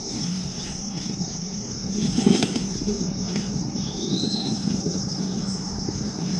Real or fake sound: fake